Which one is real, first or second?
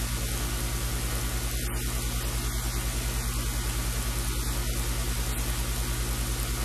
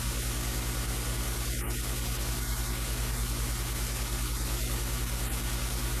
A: first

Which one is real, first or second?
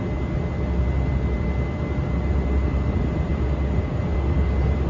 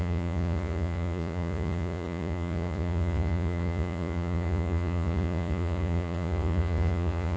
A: first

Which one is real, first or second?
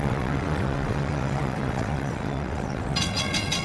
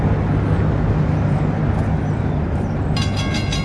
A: second